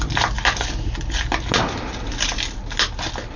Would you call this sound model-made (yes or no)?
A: no